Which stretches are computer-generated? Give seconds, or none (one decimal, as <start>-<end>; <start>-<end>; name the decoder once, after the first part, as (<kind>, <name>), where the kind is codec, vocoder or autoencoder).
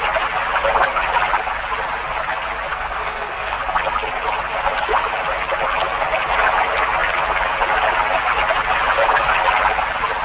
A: 2.7-3.6 (codec, SNAC)